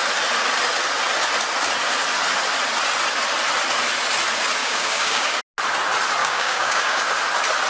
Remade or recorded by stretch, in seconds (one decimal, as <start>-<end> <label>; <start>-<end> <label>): 0.0-4.6 recorded; 4.6-5.4 remade; 5.4-6.2 recorded; 6.2-7.0 remade; 7.0-7.7 recorded